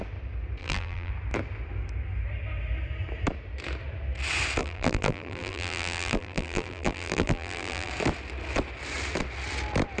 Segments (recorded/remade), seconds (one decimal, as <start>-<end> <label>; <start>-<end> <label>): 0.0-0.6 recorded; 0.6-1.1 remade; 1.1-4.6 recorded; 4.6-7.9 remade; 7.9-10.0 recorded